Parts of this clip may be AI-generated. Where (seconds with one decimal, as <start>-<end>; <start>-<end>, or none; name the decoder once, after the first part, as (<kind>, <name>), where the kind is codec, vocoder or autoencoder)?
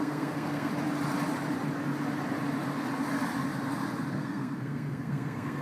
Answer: 0.0-0.7 (codec, SNAC); 4.1-5.6